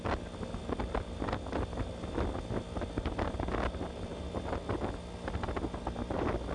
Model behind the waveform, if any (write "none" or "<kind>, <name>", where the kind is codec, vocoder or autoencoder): none